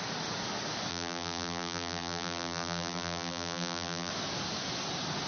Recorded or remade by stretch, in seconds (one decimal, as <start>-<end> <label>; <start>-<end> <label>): 0.0-0.9 recorded; 0.9-4.1 remade; 4.1-5.3 recorded

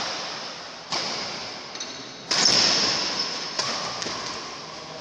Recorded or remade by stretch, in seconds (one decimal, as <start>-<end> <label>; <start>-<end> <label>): 0.0-5.0 recorded

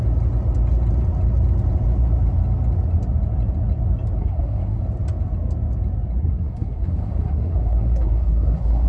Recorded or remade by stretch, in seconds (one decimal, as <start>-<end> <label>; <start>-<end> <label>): 0.0-4.2 recorded; 4.2-4.8 remade; 4.8-6.2 recorded; 6.2-8.9 remade